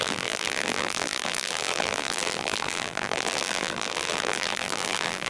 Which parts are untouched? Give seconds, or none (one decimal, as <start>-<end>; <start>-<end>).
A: none